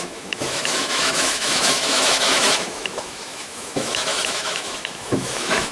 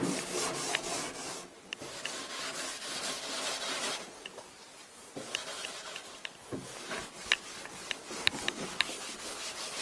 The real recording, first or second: second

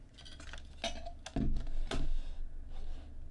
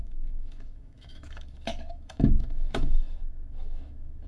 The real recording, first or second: first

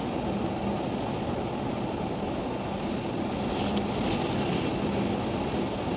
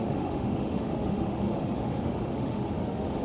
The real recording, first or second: first